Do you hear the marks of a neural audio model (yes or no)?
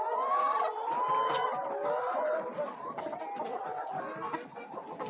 no